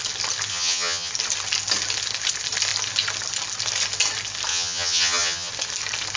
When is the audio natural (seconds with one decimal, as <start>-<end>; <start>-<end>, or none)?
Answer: 0.0-0.5; 1.1-4.5; 5.5-6.2